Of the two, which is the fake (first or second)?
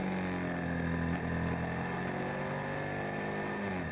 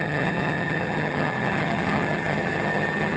second